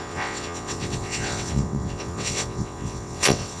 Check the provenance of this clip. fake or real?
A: fake